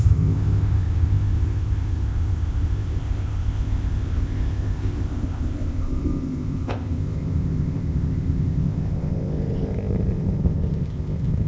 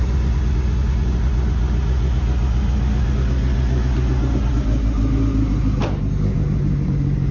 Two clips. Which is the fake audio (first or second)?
first